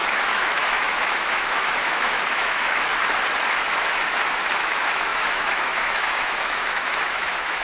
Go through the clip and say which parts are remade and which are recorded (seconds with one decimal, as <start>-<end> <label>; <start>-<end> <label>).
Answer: 0.0-2.9 remade; 2.9-3.5 recorded; 3.5-7.6 remade